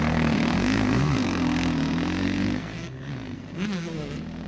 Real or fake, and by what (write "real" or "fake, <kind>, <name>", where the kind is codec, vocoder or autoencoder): fake, codec, SNAC